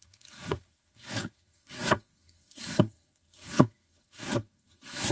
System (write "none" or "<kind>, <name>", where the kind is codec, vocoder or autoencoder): codec, SNAC